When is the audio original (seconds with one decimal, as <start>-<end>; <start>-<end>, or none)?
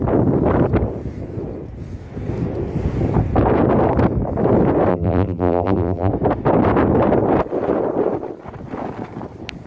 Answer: 0.0-4.9; 6.1-9.7